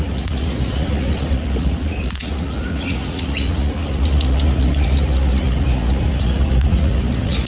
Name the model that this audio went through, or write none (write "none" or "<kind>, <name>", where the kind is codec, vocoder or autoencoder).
vocoder, Vocos